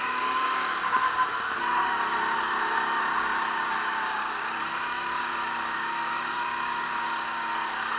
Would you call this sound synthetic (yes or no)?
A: yes